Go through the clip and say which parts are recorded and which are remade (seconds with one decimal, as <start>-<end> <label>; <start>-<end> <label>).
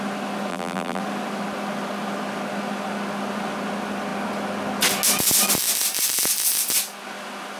0.0-0.5 recorded; 0.5-1.0 remade; 1.0-7.6 recorded